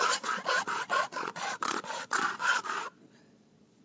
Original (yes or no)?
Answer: no